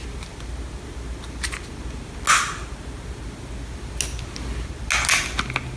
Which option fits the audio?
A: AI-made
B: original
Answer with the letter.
B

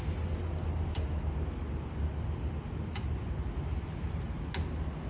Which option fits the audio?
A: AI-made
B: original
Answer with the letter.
B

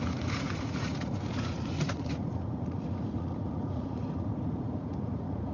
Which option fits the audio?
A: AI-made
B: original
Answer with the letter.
A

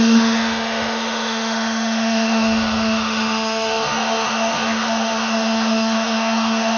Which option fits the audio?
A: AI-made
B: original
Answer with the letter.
A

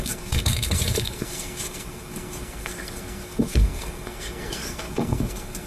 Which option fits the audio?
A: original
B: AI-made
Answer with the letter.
B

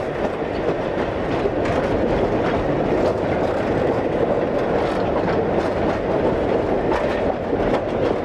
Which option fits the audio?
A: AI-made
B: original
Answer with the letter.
B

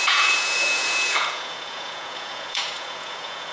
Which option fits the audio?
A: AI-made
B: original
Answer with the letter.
A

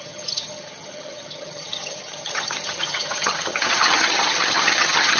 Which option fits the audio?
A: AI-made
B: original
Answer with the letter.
A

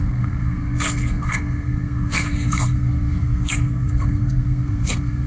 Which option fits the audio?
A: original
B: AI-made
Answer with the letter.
B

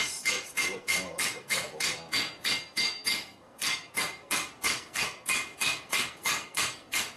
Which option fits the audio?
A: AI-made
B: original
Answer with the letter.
A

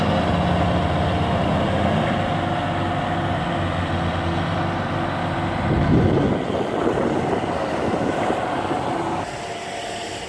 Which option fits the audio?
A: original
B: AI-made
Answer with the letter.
A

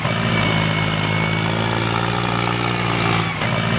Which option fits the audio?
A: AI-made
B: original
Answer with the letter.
B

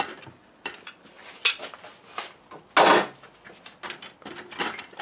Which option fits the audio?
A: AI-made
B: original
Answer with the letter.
B